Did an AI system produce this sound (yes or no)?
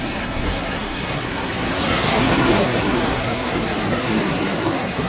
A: yes